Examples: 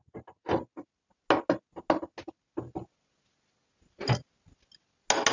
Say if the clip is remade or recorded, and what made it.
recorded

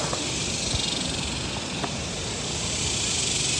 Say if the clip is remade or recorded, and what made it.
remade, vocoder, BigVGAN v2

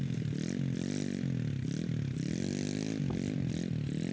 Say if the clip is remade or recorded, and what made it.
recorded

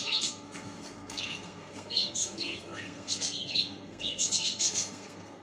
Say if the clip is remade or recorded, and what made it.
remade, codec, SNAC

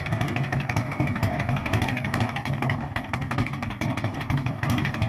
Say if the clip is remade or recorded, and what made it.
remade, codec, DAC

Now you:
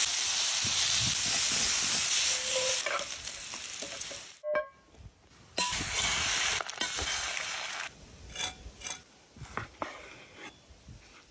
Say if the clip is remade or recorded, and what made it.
recorded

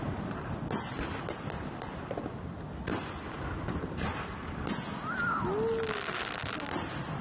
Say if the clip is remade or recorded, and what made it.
recorded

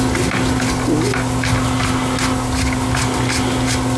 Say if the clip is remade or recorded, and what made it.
recorded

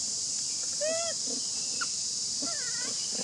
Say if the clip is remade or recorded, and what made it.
recorded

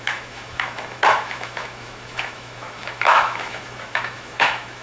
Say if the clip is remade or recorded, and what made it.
remade, autoencoder, DAC-VAE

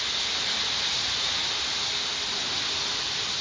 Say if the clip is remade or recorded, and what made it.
recorded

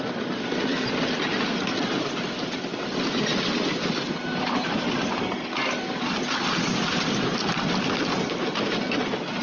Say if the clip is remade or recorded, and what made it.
recorded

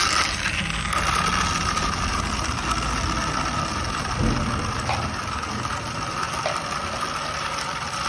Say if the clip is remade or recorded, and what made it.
recorded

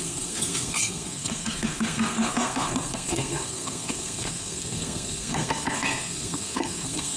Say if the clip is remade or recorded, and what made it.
remade, codec, SNAC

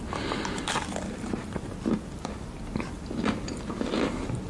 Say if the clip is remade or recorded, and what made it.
recorded